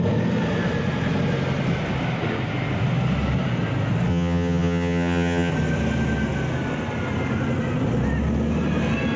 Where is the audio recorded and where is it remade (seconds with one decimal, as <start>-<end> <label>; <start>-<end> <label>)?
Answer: 0.0-4.1 recorded; 4.1-5.5 remade; 5.5-9.2 recorded